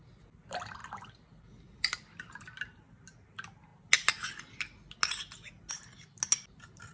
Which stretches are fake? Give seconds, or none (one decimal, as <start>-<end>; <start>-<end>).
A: 0.8-2.6